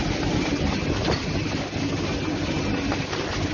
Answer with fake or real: real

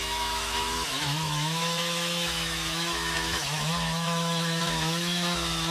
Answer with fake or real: fake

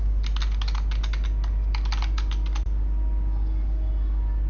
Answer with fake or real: real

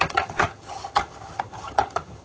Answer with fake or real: fake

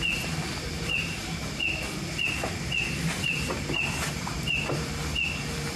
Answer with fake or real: real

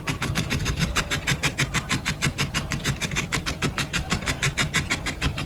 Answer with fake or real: fake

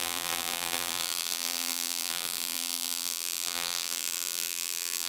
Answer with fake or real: fake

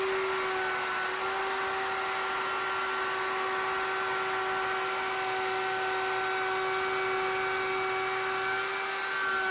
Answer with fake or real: real